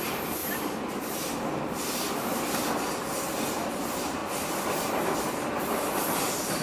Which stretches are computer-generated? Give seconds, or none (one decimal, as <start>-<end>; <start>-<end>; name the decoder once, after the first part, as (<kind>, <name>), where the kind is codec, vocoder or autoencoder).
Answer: 0.0-0.4 (vocoder, BigVGAN v2); 3.7-4.2; 5.6-6.6